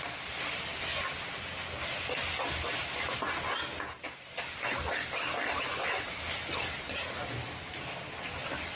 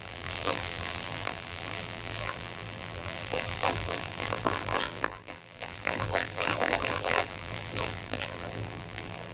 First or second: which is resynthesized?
second